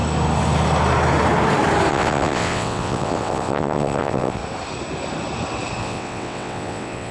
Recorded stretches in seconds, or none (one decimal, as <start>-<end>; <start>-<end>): 0.0-1.9; 4.4-5.8